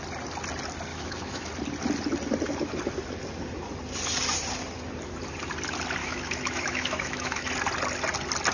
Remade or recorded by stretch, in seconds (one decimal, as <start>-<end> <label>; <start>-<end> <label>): 0.0-0.9 recorded; 0.9-1.5 remade; 1.5-6.0 recorded; 6.0-7.5 remade; 7.5-8.5 recorded